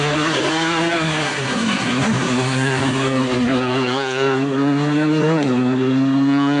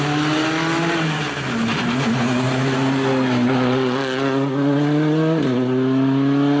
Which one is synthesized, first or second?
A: first